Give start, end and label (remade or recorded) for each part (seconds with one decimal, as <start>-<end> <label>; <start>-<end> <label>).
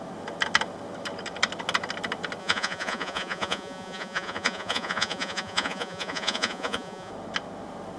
0.0-2.4 recorded; 2.4-7.1 remade; 7.1-8.0 recorded